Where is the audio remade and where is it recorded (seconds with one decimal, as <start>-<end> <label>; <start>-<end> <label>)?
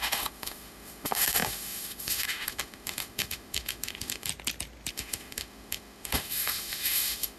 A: 0.0-4.3 remade; 4.3-4.9 recorded; 4.9-7.4 remade